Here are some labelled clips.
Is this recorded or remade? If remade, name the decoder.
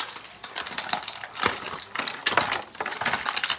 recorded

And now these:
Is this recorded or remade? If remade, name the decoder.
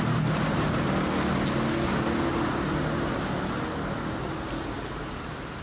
recorded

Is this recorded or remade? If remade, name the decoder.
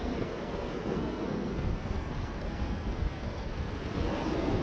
remade, codec, SNAC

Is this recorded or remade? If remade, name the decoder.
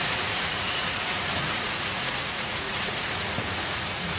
remade, vocoder, Vocos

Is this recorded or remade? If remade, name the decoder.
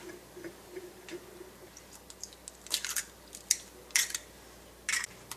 recorded